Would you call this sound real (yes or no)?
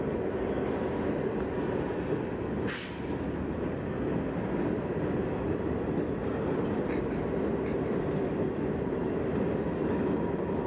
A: yes